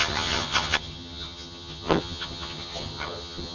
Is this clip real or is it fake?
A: fake